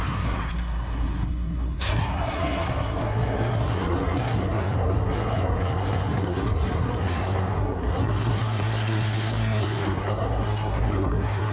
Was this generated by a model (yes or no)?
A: yes